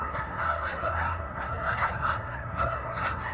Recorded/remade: remade